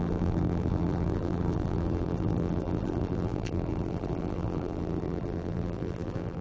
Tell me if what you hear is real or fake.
fake